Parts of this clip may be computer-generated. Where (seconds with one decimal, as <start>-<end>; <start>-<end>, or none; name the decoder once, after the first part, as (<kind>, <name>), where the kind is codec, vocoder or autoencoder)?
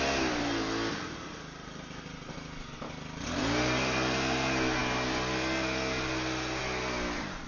none